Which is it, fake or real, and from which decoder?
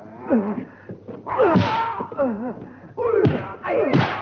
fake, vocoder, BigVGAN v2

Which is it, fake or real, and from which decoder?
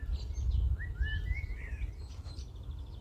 real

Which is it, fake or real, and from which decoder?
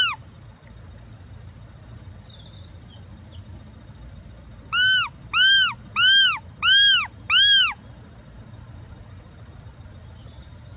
real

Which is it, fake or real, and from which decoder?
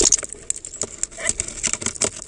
real